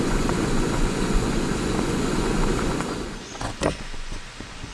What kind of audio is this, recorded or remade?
remade